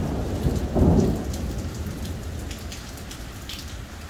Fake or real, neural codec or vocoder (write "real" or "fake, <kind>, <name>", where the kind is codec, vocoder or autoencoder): real